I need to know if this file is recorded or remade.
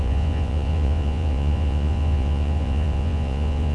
remade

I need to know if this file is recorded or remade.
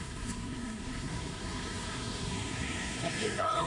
remade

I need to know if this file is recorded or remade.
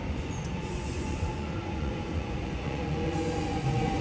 remade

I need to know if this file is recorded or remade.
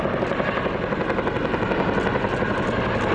recorded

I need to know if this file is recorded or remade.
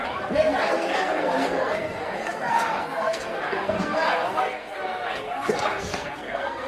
remade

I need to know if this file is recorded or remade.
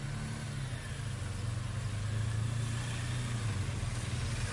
recorded